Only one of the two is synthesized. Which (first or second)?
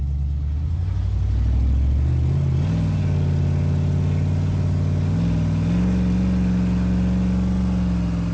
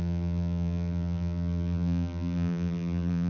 second